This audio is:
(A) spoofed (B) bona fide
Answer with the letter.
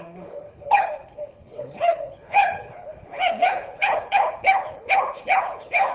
A